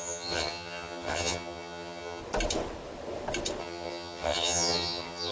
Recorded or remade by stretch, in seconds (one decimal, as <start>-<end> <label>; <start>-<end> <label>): 0.0-2.2 remade; 2.2-3.6 recorded; 3.6-5.3 remade